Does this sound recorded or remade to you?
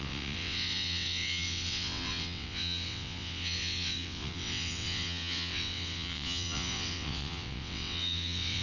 remade